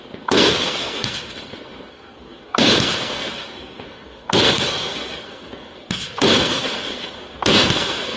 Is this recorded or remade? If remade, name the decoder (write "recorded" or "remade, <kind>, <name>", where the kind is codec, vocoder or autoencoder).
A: remade, codec, SNAC